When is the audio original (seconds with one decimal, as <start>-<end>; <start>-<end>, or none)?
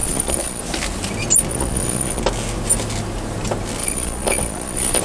0.6-1.5; 2.2-3.8